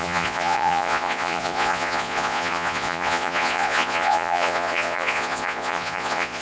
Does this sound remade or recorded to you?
remade